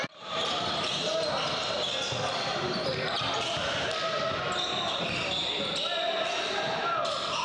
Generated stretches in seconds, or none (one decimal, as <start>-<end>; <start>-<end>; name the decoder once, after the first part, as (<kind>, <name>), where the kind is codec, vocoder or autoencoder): 0.0-1.1 (vocoder, BigVGAN v2); 2.3-2.9; 6.2-7.4

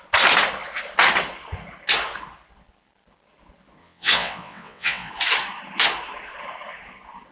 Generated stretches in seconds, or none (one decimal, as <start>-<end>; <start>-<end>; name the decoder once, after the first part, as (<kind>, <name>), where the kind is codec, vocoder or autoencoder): 3.8-5.1 (vocoder, WaveNeXt)

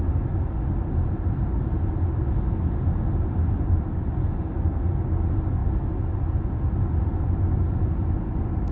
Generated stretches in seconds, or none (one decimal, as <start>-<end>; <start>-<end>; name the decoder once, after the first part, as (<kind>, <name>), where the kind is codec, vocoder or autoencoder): none

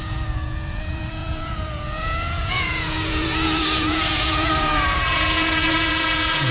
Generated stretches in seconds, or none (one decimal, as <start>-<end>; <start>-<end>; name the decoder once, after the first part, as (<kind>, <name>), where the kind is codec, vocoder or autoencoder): 0.0-6.5 (vocoder, Vocos)

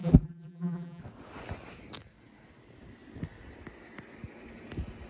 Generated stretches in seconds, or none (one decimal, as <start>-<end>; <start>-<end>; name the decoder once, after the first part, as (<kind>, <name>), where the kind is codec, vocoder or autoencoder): 0.0-1.0 (vocoder, BigVGAN v2)

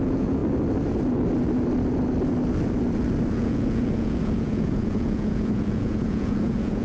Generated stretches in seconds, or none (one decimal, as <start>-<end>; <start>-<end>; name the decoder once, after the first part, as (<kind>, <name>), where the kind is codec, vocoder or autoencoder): 0.0-0.4 (vocoder, Vocos); 3.3-6.8

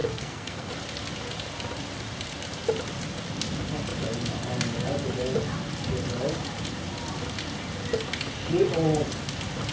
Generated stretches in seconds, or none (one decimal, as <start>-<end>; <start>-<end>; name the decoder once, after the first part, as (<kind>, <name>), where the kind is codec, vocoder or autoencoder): 0.0-0.7 (codec, SNAC)